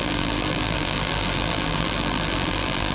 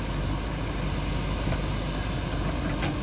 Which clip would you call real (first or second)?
second